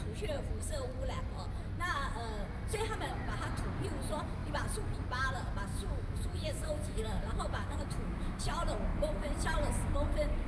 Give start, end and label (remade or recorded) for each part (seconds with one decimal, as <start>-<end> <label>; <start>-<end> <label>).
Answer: 0.0-5.7 recorded; 5.7-8.4 remade; 8.4-10.5 recorded